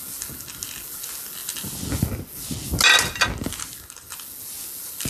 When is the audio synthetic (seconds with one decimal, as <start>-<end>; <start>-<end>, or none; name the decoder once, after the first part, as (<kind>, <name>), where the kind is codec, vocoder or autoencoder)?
none